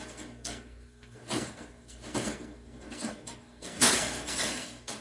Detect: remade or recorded remade